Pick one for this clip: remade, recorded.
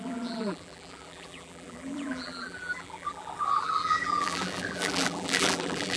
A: remade